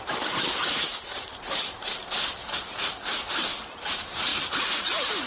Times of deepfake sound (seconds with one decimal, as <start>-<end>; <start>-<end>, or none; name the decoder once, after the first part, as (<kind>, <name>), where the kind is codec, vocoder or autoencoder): 0.0-4.3 (vocoder, BigVGAN v2)